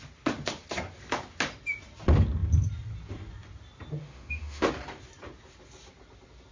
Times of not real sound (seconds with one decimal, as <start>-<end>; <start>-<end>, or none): 4.0-4.7

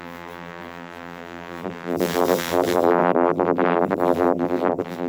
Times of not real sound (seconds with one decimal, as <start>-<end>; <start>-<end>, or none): 0.0-5.1

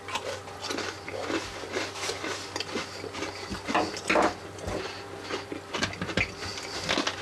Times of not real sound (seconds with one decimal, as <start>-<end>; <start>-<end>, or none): none

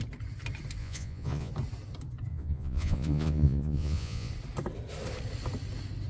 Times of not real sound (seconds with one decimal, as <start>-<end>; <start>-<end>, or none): 0.8-1.5; 2.3-4.3

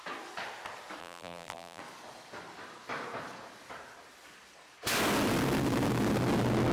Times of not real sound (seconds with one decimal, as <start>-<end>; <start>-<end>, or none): 1.0-1.8

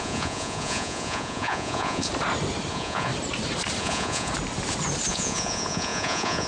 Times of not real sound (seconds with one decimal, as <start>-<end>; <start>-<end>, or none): 0.0-2.1; 2.7-3.1; 3.8-4.3; 5.1-6.5